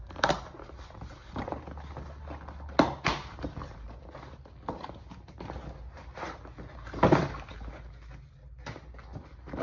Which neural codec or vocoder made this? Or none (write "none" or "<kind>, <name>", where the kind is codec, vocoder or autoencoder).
none